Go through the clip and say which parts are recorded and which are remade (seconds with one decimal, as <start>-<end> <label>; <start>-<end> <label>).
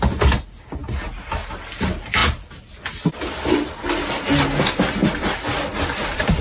0.0-5.0 recorded; 5.0-6.4 remade